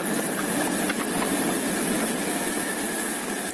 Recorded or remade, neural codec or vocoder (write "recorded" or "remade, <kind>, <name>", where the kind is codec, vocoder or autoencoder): recorded